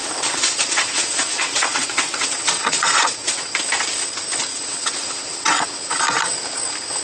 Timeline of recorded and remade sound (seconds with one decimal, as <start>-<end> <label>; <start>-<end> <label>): 0.0-3.5 remade; 3.5-4.5 recorded; 4.5-5.9 remade; 5.9-7.0 recorded